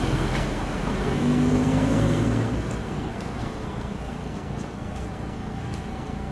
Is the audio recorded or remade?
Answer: remade